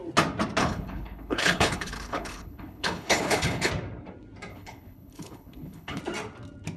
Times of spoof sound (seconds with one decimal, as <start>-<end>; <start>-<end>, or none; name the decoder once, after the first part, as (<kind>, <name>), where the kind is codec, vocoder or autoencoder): 0.6-3.7 (codec, HILCodec); 4.5-6.0